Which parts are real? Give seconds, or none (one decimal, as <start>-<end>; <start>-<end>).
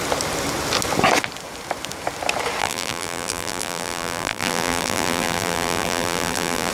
0.0-2.6